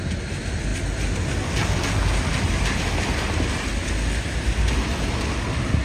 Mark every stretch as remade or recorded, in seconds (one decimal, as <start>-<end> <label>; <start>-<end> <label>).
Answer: 0.0-5.8 recorded